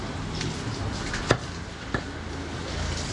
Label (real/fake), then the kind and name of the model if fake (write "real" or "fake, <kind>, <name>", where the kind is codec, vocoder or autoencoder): real